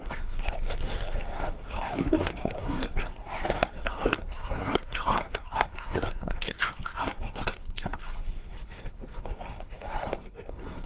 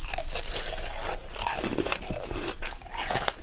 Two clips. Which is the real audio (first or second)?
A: second